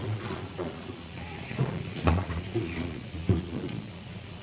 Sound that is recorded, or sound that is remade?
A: remade